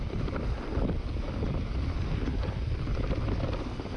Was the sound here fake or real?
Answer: real